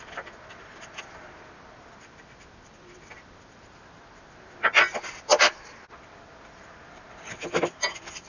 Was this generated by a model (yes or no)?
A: no